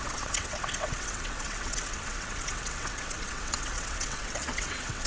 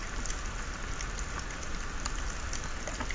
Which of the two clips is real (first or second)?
second